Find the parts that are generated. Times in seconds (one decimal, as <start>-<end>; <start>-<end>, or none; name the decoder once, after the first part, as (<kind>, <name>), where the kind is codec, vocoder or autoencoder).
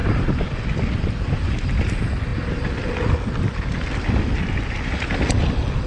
none